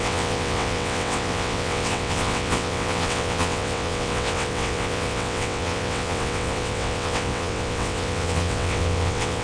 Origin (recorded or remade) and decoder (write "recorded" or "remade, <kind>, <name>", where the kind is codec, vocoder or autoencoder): remade, vocoder, WaveNeXt